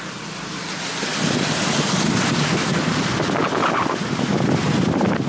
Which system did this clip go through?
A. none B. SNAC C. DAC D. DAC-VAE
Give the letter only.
A